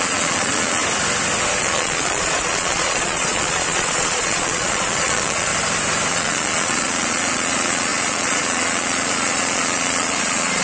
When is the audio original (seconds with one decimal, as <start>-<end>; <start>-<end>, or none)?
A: 0.8-1.6; 5.5-6.1